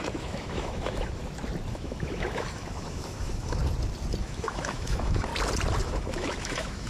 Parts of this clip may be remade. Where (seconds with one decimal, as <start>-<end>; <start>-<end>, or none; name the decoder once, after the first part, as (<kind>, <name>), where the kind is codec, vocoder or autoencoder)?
0.0-1.2 (autoencoder, DAC-VAE); 1.7-3.6; 4.2-5.3; 5.8-6.9